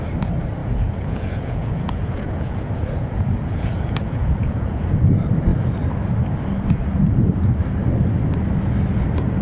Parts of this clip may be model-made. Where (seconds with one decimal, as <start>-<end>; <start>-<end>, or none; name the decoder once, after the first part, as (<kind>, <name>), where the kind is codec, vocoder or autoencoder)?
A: 0.6-4.9 (vocoder, Vocos)